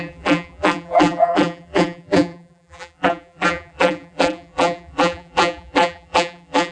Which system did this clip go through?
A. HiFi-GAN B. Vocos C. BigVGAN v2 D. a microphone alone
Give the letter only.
C